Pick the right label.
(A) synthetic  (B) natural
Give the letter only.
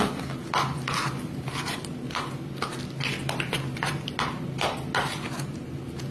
B